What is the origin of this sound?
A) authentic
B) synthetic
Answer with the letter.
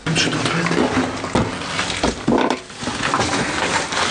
A